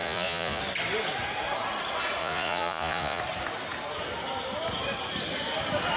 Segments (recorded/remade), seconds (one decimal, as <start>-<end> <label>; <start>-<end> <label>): 0.0-0.6 remade; 0.6-2.2 recorded; 2.2-3.2 remade; 3.2-6.0 recorded